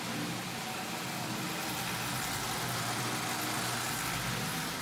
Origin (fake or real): real